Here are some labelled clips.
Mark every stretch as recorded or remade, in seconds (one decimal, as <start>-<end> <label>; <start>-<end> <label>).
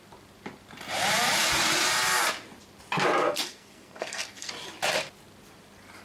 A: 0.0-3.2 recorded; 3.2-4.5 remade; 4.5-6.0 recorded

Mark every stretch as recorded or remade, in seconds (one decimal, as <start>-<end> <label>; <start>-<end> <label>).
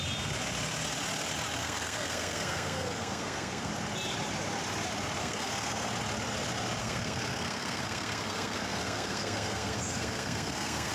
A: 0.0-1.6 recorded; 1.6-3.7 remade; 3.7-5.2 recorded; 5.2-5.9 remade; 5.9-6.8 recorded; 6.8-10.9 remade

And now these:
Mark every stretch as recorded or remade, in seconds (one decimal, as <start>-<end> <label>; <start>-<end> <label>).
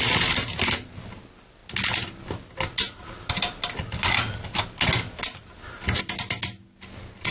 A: 0.0-7.3 recorded